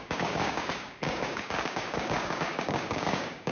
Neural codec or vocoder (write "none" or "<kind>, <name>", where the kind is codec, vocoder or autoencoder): codec, DAC